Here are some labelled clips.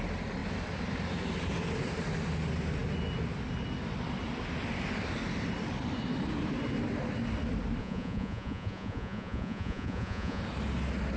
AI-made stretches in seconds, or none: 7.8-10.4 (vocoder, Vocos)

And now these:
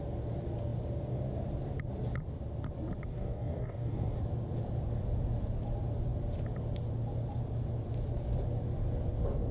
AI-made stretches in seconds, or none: 3.1-4.2 (codec, DAC)

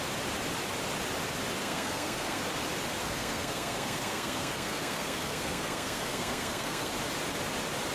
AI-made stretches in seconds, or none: 1.6-2.4 (codec, SNAC); 3.0-6.9

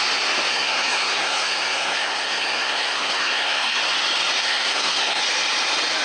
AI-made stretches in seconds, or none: 0.5-3.8 (codec, SNAC); 4.4-5.2

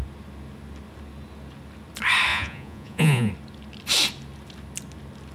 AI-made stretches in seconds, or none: 2.3-3.3 (vocoder, Vocos)

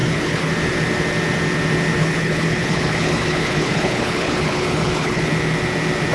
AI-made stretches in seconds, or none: 0.0-0.5 (codec, HILCodec); 2.0-5.3

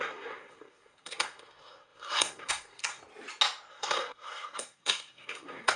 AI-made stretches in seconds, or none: 0.0-3.0 (codec, SNAC); 3.7-5.8

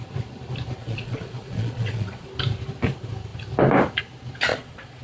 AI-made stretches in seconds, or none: 0.8-2.3 (vocoder, Vocos); 4.5-5.0